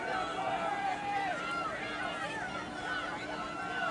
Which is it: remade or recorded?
recorded